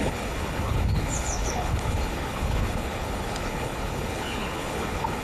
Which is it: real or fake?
fake